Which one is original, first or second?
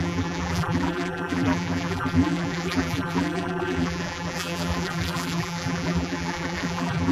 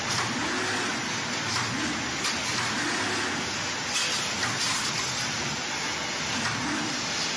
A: second